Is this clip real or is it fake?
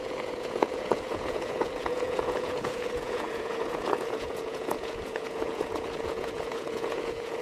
fake